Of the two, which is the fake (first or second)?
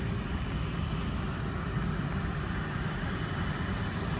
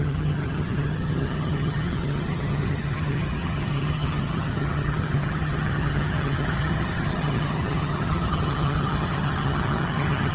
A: second